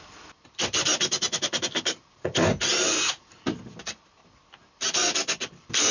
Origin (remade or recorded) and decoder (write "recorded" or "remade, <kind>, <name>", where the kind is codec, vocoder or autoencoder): recorded